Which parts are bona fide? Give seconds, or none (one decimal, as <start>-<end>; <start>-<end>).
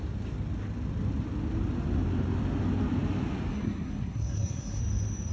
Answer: 0.0-3.5; 4.8-5.3